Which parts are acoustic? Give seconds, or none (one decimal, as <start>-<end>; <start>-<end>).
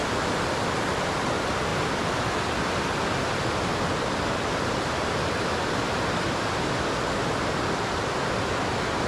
0.0-9.1